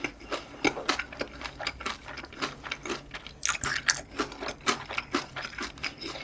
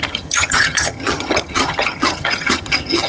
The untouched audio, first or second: first